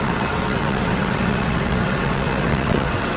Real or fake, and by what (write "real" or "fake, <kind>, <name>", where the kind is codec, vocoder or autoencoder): fake, vocoder, WaveNeXt